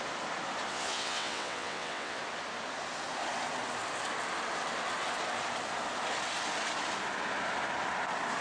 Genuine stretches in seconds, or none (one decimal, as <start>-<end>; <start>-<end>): 0.0-0.7; 2.2-8.4